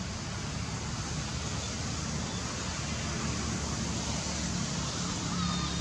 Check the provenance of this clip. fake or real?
real